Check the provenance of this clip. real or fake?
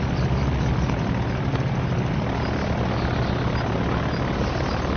real